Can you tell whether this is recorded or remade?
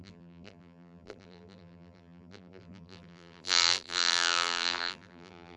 remade